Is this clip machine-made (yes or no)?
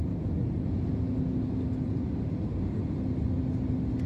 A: no